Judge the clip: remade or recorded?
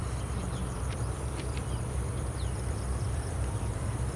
remade